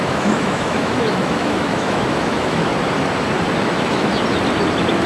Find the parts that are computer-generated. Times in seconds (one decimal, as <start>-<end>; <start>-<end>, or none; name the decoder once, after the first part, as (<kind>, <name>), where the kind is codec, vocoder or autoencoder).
0.0-2.7 (autoencoder, DAC-VAE); 3.6-4.1